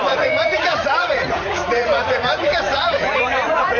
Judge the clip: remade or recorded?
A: remade